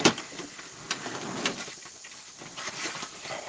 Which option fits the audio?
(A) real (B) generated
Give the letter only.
A